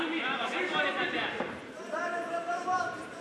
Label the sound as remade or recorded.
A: remade